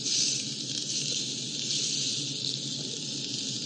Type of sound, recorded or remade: recorded